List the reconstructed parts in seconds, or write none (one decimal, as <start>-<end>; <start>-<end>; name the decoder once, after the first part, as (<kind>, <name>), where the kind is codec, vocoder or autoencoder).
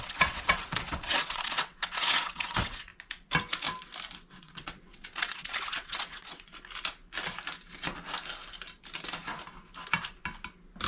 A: 0.0-2.9 (vocoder, WaveNeXt); 4.3-6.5